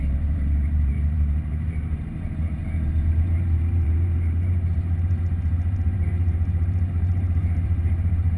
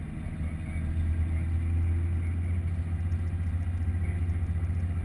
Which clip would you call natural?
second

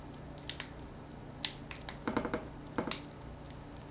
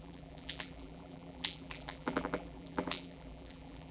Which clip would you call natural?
first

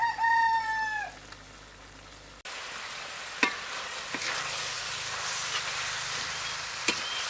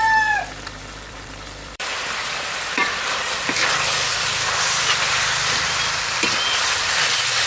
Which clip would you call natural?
first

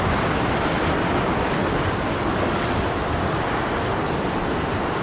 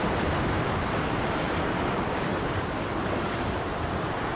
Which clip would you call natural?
first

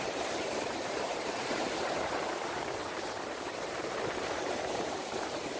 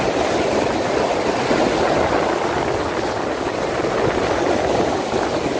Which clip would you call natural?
second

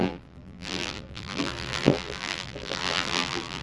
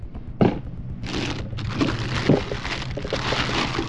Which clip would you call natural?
second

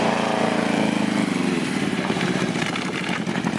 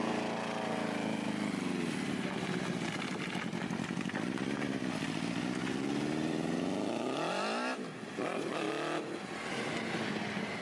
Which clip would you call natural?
second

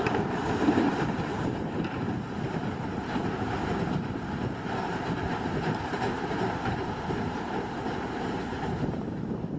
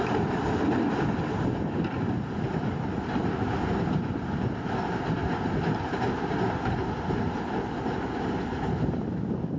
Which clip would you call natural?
second